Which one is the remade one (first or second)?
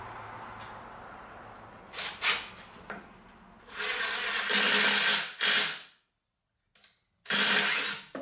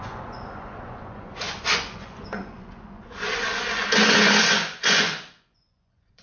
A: second